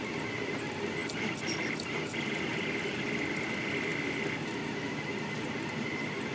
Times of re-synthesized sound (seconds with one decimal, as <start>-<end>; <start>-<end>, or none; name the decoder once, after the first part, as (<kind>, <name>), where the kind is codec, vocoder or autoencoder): none